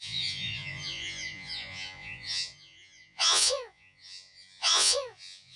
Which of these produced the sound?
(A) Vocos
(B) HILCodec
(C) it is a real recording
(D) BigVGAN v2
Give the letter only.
A